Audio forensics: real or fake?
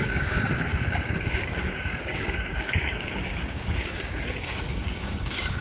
fake